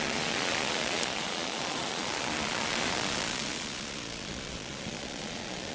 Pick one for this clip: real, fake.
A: fake